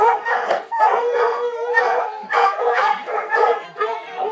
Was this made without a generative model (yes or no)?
no